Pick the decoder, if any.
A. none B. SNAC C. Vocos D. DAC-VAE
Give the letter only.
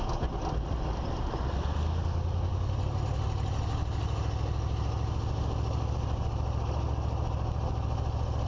A